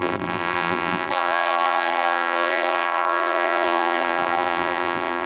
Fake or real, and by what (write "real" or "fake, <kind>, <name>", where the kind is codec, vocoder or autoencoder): fake, vocoder, BigVGAN v2